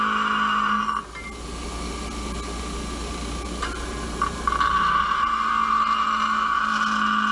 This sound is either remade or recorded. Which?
recorded